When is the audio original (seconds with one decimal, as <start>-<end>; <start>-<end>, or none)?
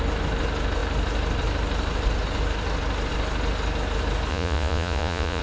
0.0-4.3